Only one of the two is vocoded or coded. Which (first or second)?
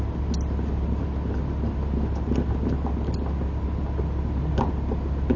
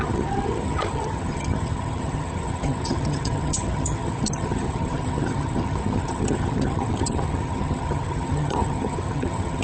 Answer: second